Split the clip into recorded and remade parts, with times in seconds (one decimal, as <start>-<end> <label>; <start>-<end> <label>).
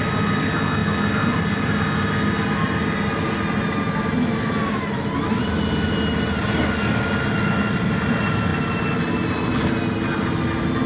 0.0-10.9 recorded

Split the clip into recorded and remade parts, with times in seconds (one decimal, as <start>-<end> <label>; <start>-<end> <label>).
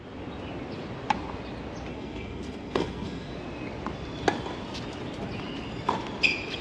0.0-1.9 recorded; 1.9-3.3 remade; 3.3-6.6 recorded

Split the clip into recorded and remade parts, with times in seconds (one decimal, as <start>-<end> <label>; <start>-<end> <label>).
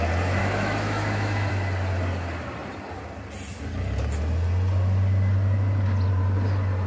0.0-0.4 recorded; 0.4-1.5 remade; 1.5-6.9 recorded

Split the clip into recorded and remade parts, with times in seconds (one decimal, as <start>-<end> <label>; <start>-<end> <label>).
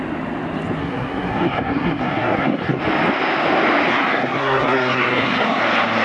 0.0-0.8 recorded; 0.8-2.8 remade; 2.8-3.9 recorded; 3.9-5.6 remade; 5.6-6.0 recorded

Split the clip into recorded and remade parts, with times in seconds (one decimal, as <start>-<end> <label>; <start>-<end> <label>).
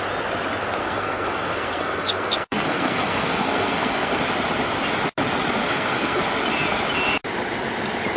0.0-0.8 recorded; 0.8-4.2 remade; 4.2-5.6 recorded; 5.6-6.2 remade; 6.2-8.2 recorded